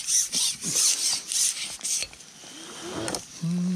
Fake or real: real